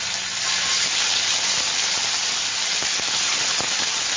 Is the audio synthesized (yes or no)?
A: no